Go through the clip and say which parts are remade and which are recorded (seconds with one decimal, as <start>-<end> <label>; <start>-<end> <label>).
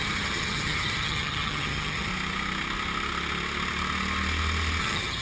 0.0-2.1 remade; 2.1-4.8 recorded; 4.8-5.2 remade